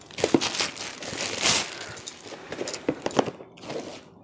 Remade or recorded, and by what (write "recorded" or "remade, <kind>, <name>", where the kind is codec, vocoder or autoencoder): recorded